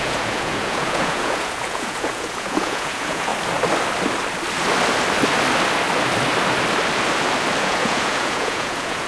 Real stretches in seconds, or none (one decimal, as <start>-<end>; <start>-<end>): 3.3-7.6